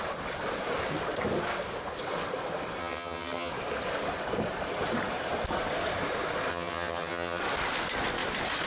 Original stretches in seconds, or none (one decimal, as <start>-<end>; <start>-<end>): 0.0-2.8; 3.5-6.5; 7.4-8.7